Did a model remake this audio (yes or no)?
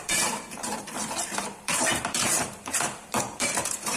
yes